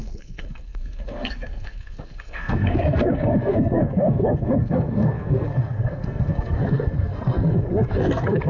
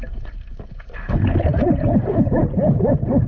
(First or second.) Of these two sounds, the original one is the second